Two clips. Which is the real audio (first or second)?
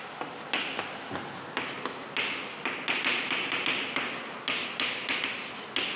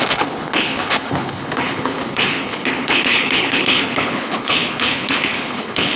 first